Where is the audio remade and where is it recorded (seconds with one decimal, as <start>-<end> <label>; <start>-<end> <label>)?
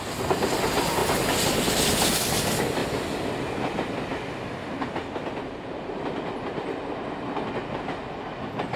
0.0-8.8 recorded